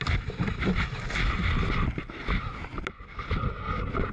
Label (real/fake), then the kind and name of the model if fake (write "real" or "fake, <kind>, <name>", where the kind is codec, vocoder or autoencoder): real